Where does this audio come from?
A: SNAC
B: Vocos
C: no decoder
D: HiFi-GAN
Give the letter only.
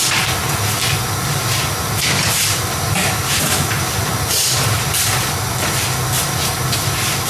C